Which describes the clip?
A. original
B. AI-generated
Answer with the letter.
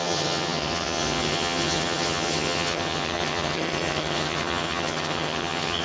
B